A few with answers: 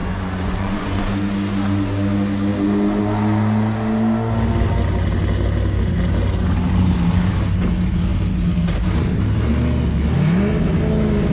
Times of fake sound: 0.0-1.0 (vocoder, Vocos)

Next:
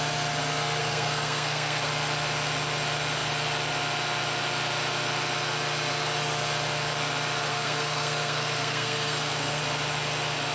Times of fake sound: 0.8-1.9 (codec, SNAC); 7.5-9.6